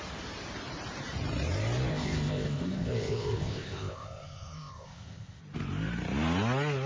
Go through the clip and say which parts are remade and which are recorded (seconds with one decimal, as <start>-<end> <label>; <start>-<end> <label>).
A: 0.0-1.9 recorded; 1.9-5.4 remade; 5.4-6.9 recorded